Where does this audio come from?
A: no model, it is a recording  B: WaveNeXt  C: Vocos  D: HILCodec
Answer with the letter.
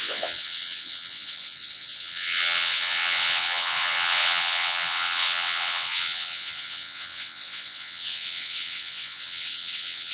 B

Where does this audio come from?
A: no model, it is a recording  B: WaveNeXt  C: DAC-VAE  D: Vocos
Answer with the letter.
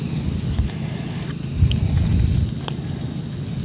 A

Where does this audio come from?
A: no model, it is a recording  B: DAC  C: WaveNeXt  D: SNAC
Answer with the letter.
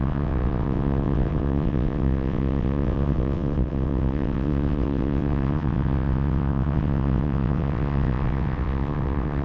C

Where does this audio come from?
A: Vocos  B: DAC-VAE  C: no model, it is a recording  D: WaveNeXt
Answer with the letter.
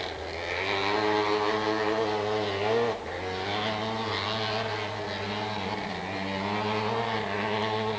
C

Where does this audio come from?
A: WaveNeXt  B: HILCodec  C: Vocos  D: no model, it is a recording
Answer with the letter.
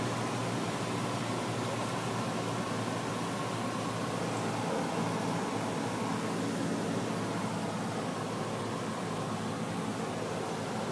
D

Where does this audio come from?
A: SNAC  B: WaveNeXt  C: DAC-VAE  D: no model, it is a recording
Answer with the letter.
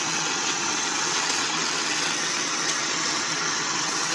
B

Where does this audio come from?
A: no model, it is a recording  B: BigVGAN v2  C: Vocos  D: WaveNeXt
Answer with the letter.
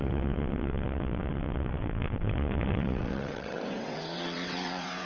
D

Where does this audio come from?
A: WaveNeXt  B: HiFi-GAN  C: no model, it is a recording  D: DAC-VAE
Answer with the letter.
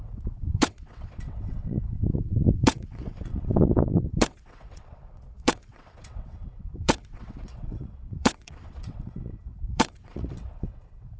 A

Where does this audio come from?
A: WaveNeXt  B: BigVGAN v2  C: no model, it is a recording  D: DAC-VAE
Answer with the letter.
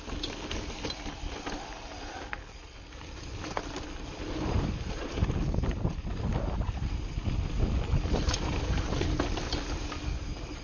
C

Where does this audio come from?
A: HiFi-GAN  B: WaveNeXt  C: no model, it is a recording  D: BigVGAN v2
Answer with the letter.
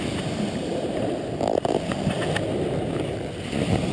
C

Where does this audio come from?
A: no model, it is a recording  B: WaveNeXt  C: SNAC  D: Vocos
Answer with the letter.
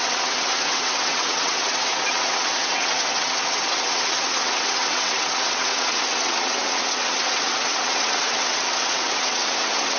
B